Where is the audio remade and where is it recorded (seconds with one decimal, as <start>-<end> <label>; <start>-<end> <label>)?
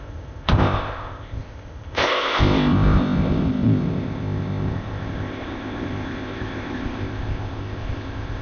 0.0-8.4 remade